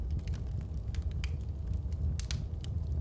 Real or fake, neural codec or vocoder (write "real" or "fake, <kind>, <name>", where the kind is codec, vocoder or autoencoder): real